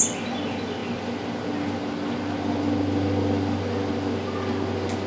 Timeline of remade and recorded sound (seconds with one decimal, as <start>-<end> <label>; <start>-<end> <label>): 0.0-5.1 recorded